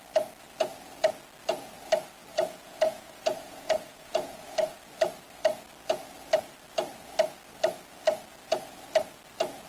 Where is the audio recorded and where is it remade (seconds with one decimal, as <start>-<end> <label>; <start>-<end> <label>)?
0.0-2.3 recorded; 2.3-4.8 remade; 4.8-9.7 recorded